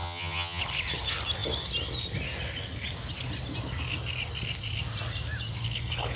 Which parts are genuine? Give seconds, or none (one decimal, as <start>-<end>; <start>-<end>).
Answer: 0.6-6.2